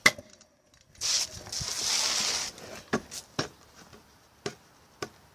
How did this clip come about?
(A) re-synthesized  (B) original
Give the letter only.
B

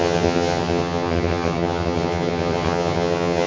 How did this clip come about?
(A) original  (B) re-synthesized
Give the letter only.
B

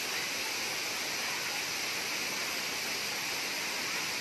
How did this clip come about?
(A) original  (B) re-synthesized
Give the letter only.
A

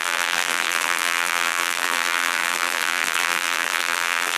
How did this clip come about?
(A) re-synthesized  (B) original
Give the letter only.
A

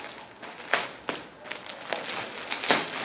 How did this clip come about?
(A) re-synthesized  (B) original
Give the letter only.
B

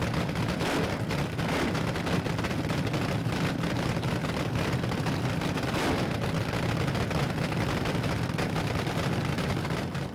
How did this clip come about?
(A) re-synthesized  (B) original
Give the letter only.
B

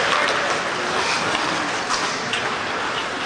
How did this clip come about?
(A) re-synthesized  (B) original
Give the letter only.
B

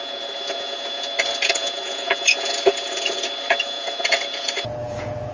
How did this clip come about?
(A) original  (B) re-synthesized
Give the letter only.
B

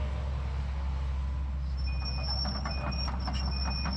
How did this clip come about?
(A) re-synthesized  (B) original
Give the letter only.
B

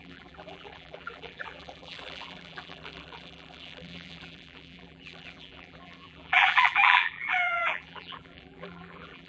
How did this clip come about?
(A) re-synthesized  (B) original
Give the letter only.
A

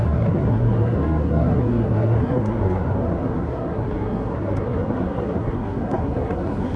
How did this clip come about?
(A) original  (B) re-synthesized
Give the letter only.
B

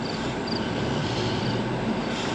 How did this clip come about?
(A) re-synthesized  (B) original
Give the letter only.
A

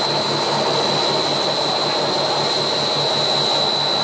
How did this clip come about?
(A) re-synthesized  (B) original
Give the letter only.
B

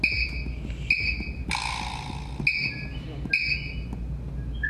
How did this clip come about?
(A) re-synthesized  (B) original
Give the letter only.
B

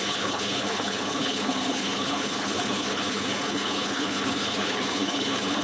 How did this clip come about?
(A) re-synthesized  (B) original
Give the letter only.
A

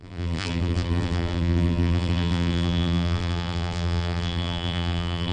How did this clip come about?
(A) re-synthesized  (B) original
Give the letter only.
A